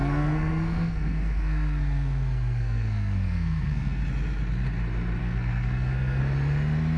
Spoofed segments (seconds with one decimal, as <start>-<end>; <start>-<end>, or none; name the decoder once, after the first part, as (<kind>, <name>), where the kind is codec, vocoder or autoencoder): 0.0-4.0 (codec, SNAC); 5.2-6.2

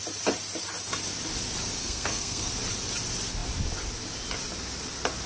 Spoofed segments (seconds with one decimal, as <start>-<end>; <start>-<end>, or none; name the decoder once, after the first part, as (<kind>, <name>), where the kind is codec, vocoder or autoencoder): 1.8-2.5 (codec, SNAC)

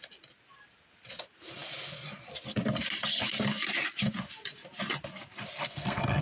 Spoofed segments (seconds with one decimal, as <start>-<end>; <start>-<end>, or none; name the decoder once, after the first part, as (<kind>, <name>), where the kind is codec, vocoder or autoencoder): 5.6-6.2 (codec, SNAC)

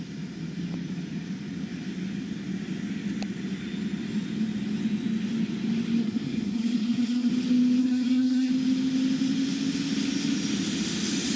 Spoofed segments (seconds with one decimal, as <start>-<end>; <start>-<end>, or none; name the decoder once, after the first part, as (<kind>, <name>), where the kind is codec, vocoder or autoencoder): 6.0-7.3 (codec, SNAC); 7.8-8.5

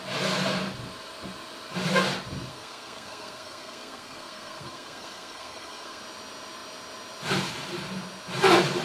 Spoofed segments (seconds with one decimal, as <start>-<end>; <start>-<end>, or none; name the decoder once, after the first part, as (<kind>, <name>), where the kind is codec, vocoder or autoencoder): 2.5-6.0 (codec, SNAC)

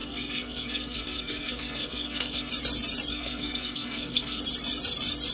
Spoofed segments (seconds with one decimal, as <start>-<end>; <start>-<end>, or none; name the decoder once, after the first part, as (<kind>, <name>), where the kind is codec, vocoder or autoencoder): 0.0-2.5 (codec, SNAC); 3.1-4.4

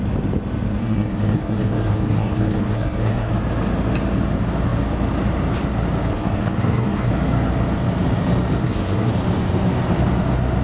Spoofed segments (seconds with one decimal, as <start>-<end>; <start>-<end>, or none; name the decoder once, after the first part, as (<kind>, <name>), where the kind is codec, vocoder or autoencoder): 0.8-3.3 (codec, SNAC); 6.1-7.1; 8.6-9.1

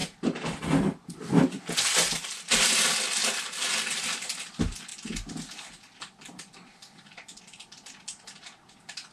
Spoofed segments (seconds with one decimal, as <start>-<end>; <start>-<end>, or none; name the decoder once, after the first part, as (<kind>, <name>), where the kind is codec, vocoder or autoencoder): none